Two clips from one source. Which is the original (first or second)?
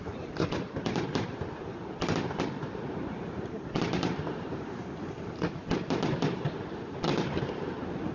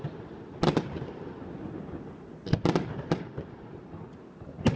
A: second